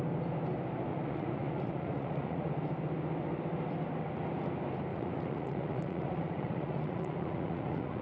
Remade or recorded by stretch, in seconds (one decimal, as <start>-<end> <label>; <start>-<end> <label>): 0.0-0.9 recorded; 0.9-2.5 remade; 2.5-4.9 recorded; 4.9-8.0 remade